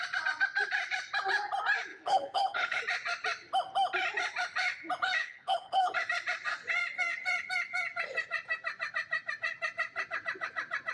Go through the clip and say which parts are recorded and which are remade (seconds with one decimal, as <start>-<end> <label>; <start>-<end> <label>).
0.0-1.9 recorded; 1.9-2.8 remade; 2.8-5.2 recorded; 5.2-5.9 remade; 5.9-10.9 recorded